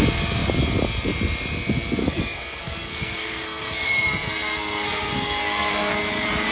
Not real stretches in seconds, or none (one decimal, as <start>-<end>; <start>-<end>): 2.0-5.9